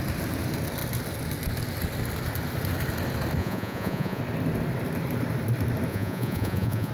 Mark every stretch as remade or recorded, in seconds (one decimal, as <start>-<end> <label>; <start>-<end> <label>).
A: 0.0-3.4 recorded; 3.4-4.2 remade; 4.2-5.9 recorded; 5.9-6.9 remade